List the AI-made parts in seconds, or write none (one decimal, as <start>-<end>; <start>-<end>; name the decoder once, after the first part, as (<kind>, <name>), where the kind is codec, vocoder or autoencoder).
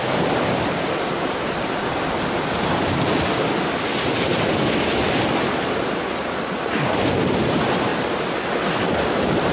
none